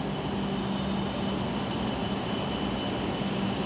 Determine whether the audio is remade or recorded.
recorded